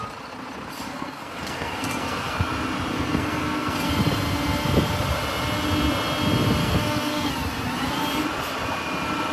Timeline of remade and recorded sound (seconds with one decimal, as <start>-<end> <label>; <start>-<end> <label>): 0.0-0.7 recorded; 0.7-2.5 remade; 2.5-2.9 recorded; 2.9-3.9 remade; 3.9-6.6 recorded; 6.6-7.3 remade; 7.3-9.3 recorded